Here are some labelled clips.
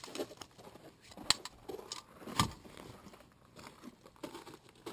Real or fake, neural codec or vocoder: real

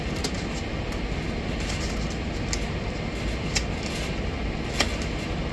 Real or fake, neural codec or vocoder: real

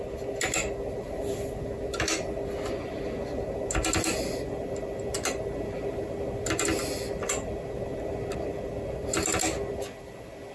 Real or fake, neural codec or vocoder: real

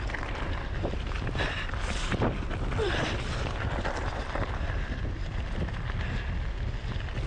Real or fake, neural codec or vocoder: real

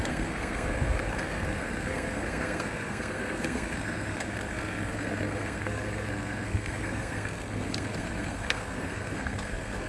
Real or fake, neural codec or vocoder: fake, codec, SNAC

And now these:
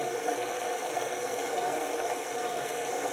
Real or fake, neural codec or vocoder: fake, codec, SNAC